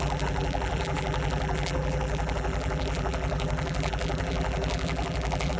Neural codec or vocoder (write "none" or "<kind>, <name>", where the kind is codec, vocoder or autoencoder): vocoder, BigVGAN v2